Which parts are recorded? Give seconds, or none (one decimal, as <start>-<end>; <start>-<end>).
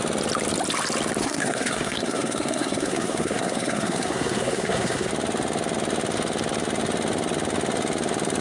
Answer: 0.0-1.2; 5.1-8.4